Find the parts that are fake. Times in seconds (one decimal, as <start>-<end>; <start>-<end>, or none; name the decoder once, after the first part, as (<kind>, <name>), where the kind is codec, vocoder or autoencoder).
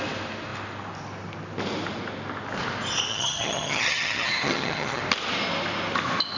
3.1-5.0 (vocoder, HiFi-GAN)